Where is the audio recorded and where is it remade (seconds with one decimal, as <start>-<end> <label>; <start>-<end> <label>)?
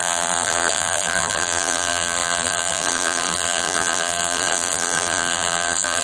0.0-6.0 remade